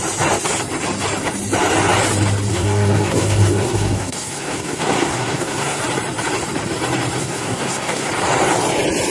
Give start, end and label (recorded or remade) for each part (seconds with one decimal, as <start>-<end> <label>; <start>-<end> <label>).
0.0-2.5 recorded; 2.5-5.8 remade; 5.8-7.2 recorded; 7.2-8.1 remade; 8.1-9.1 recorded